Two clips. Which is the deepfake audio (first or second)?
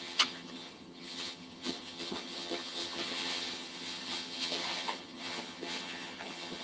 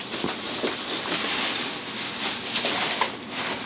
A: first